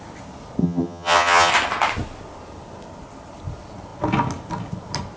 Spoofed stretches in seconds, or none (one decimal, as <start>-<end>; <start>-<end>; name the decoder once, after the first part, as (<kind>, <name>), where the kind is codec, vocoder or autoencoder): 0.6-1.5 (vocoder, HiFi-GAN)